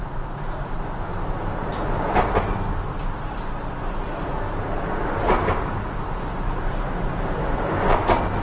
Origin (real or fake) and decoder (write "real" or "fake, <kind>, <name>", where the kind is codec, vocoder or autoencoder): real